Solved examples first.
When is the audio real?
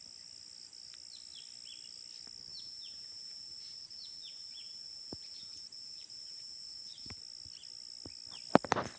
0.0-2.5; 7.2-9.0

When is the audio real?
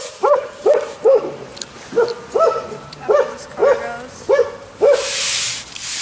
1.5-2.7; 3.6-6.0